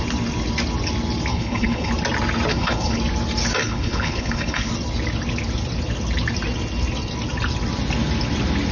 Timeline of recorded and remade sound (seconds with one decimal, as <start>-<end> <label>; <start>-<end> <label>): 0.0-1.3 recorded; 1.3-1.9 remade; 1.9-2.5 recorded; 2.5-3.0 remade; 3.0-3.6 recorded; 3.6-4.7 remade; 4.7-8.7 recorded